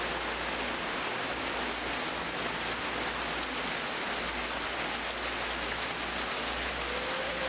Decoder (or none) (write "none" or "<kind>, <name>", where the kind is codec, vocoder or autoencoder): none